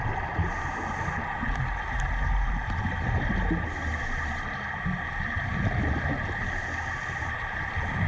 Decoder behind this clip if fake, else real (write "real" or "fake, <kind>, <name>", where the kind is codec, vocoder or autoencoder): real